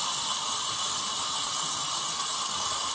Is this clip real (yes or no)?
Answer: yes